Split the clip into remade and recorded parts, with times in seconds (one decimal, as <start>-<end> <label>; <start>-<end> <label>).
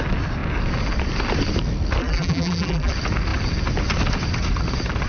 0.0-2.0 recorded; 2.0-2.9 remade; 2.9-5.1 recorded